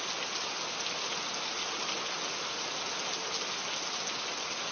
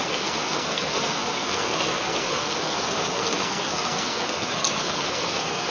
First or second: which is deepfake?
second